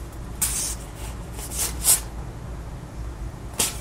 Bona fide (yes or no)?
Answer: yes